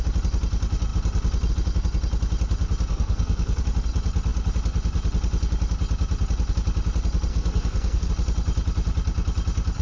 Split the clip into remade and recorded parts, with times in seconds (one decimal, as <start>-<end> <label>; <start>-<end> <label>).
0.0-2.9 recorded; 2.9-3.6 remade; 3.6-7.3 recorded; 7.3-8.1 remade; 8.1-9.8 recorded